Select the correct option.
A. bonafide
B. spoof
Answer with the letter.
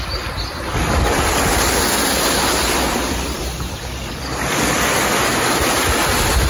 A